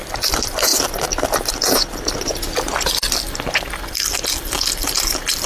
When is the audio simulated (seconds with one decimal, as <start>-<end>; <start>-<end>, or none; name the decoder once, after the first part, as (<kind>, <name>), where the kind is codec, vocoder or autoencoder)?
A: 0.0-0.7 (vocoder, BigVGAN v2); 3.9-5.5